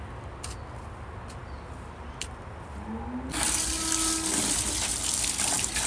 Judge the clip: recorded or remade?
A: recorded